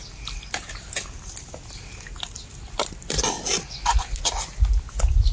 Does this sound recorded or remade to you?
recorded